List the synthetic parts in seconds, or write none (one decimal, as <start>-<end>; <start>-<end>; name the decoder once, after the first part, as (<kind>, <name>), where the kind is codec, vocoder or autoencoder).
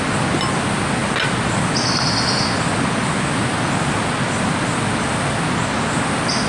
none